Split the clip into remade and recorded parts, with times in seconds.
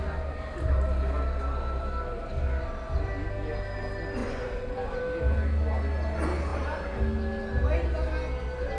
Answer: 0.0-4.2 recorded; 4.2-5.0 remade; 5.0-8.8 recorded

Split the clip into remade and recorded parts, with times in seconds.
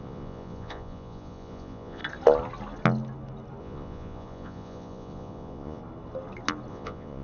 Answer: 0.0-2.0 remade; 2.0-3.6 recorded; 3.6-5.8 remade; 5.8-6.7 recorded; 6.7-7.2 remade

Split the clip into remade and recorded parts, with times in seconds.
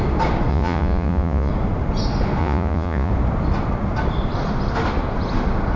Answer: 0.0-0.5 recorded; 0.5-1.5 remade; 1.5-2.4 recorded; 2.4-3.1 remade; 3.1-5.8 recorded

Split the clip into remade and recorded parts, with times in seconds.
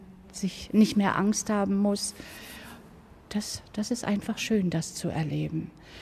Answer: 0.0-6.0 recorded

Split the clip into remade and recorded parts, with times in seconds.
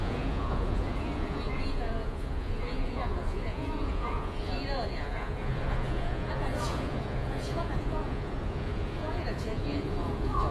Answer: 0.0-10.5 remade